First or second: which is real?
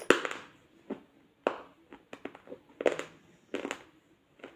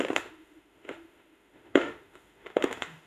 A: first